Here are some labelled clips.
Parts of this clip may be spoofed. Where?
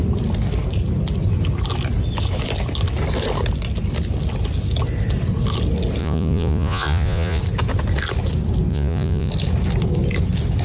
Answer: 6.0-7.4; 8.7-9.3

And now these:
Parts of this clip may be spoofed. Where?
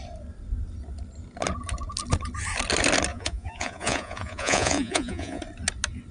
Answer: 3.1-5.4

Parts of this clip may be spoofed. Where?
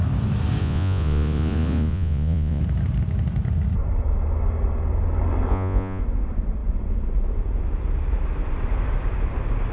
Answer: 0.6-2.6; 5.5-6.0